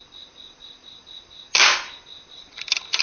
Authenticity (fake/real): real